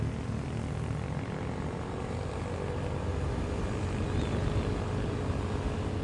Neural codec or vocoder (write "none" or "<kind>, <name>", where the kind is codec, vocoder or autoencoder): none